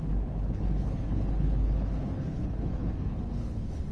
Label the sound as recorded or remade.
remade